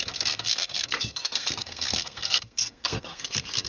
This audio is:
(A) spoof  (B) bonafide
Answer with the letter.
A